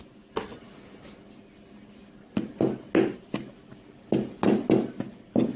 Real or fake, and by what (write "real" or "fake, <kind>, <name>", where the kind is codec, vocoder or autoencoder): real